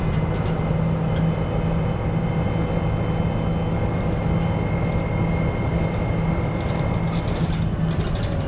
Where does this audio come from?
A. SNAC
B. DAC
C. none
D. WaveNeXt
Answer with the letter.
C